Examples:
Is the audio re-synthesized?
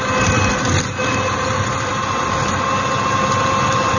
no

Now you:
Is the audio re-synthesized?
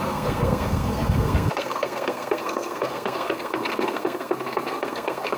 yes